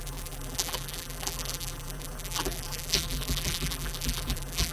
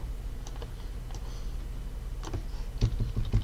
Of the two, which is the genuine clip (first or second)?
second